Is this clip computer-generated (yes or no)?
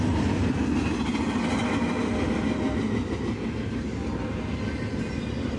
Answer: no